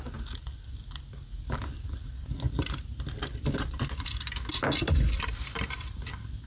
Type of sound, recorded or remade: recorded